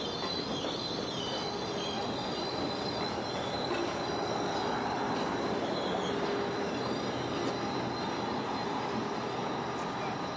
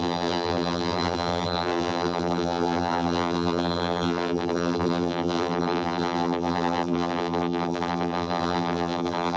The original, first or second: first